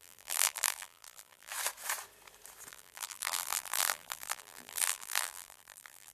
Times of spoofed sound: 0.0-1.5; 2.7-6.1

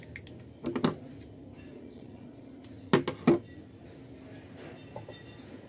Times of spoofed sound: 1.7-2.6